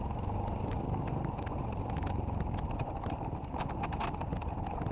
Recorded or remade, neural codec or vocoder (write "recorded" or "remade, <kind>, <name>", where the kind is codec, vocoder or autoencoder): recorded